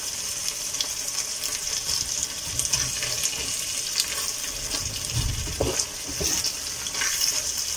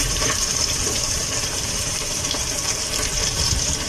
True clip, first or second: first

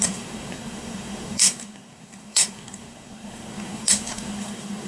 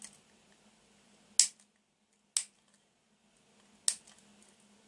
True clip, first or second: second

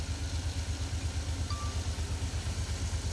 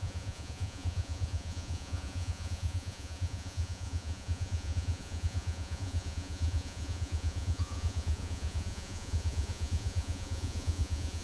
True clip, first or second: first